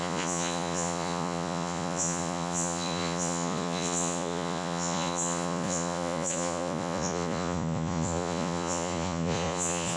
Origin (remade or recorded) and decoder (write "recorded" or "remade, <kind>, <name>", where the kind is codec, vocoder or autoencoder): remade, vocoder, Vocos